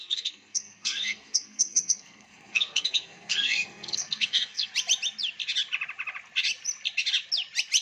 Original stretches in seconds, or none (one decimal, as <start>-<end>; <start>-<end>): 4.7-7.8